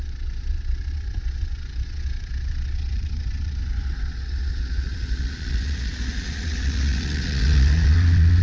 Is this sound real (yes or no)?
no